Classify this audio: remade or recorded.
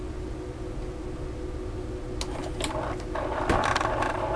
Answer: recorded